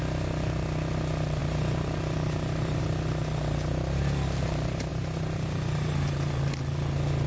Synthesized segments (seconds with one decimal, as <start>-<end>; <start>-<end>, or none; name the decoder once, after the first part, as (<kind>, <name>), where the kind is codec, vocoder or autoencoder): 1.4-2.8 (vocoder, BigVGAN v2); 4.9-6.4